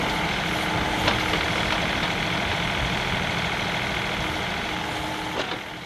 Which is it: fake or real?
real